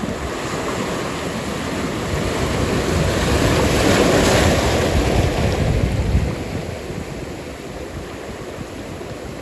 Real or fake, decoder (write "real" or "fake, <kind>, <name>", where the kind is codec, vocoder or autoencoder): real